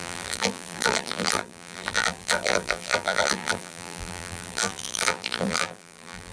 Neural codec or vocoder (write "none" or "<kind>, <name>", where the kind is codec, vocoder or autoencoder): vocoder, BigVGAN v2